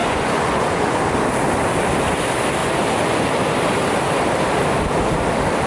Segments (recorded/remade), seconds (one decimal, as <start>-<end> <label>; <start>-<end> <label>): 0.0-1.0 remade; 1.0-2.6 recorded; 2.6-3.3 remade; 3.3-5.7 recorded